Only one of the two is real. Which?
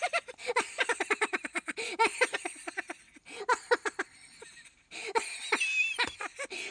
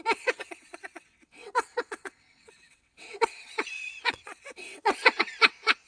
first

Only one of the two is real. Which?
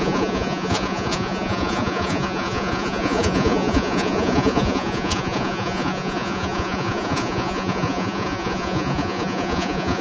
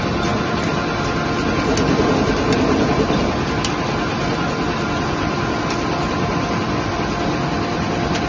second